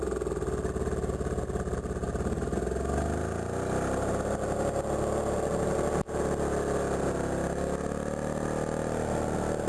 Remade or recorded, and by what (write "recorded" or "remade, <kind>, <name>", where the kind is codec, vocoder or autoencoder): recorded